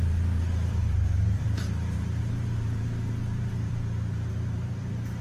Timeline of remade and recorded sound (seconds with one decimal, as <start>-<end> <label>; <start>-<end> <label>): 0.0-5.2 remade